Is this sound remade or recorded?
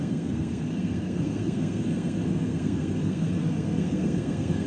remade